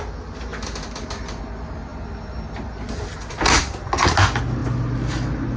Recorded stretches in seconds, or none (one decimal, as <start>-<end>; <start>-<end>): 0.0-5.6